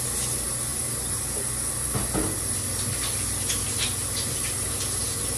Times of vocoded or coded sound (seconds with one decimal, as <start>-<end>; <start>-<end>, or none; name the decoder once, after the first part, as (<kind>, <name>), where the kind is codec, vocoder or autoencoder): none